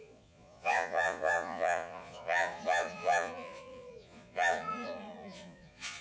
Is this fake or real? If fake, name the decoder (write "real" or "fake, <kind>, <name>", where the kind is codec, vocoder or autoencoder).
fake, vocoder, Vocos